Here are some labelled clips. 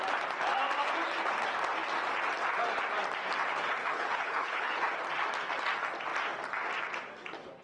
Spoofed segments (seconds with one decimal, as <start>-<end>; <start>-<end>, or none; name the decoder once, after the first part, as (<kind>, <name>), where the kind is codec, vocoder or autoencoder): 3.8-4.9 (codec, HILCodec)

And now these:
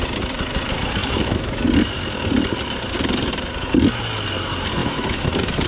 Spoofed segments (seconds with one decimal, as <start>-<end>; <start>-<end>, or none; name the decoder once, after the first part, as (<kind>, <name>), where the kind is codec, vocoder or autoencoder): 1.0-1.7 (autoencoder, DAC-VAE); 4.8-5.3

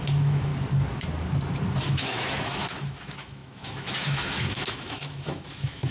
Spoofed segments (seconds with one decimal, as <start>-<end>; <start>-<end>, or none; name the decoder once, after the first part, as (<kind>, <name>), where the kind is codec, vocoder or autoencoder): 0.0-0.5 (autoencoder, DAC-VAE); 1.8-5.9

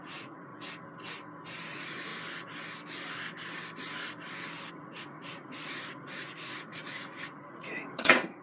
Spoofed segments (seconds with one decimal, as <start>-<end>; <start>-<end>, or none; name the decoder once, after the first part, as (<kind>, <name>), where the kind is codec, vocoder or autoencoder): 0.0-0.5 (vocoder, Vocos); 1.7-2.1; 4.7-8.4

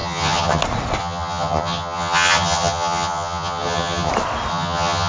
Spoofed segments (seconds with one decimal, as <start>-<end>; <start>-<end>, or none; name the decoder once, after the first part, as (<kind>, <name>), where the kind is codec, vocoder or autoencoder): 0.0-0.6 (vocoder, HiFi-GAN); 1.0-4.1; 4.5-5.1

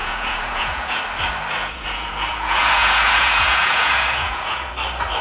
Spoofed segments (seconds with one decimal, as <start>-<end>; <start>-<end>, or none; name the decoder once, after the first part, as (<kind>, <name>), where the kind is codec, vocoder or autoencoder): 0.0-1.0 (vocoder, Vocos); 1.6-4.7